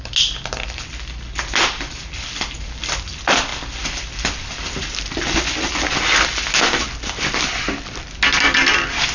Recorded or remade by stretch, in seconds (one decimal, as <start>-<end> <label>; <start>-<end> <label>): 0.0-9.1 recorded